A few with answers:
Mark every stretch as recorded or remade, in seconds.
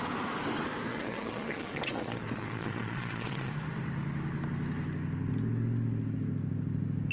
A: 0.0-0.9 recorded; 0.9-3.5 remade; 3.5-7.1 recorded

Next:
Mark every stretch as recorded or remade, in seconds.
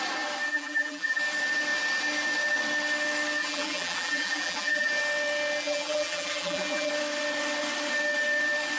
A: 0.0-0.5 recorded; 0.5-1.2 remade; 1.2-3.4 recorded; 3.4-4.9 remade; 4.9-5.6 recorded; 5.6-6.9 remade; 6.9-8.8 recorded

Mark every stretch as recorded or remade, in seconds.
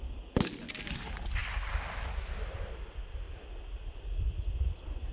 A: 0.0-5.1 recorded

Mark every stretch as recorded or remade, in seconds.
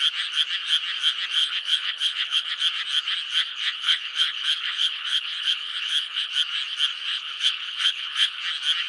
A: 0.0-1.4 recorded; 1.4-2.6 remade; 2.6-3.5 recorded; 3.5-6.3 remade; 6.3-7.1 recorded; 7.1-8.4 remade; 8.4-8.9 recorded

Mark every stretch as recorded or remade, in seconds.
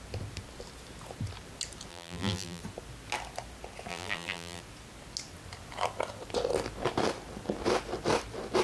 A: 0.0-1.9 recorded; 1.9-2.6 remade; 2.6-3.9 recorded; 3.9-4.6 remade; 4.6-8.6 recorded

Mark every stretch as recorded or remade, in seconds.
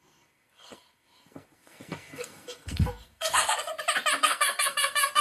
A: 0.0-3.7 remade; 3.7-4.2 recorded; 4.2-5.2 remade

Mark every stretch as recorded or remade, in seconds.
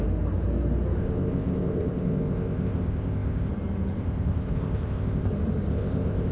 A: 0.0-1.0 recorded; 1.0-3.5 remade; 3.5-4.0 recorded; 4.0-5.3 remade; 5.3-5.7 recorded; 5.7-6.3 remade